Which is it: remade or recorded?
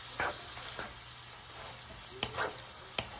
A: recorded